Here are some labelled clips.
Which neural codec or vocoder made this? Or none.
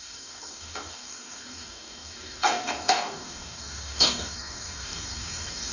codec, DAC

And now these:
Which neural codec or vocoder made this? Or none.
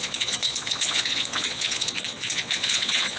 vocoder, Vocos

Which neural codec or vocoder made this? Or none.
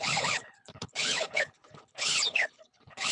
codec, HILCodec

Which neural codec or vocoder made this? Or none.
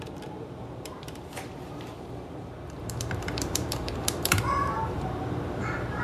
vocoder, BigVGAN v2